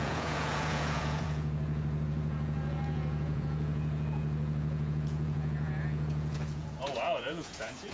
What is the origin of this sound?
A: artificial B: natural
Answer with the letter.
A